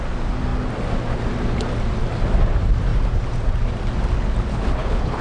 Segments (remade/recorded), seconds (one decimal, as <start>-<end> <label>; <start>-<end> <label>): 0.0-4.5 recorded; 4.5-5.2 remade